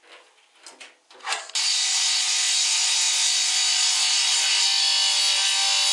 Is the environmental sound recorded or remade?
recorded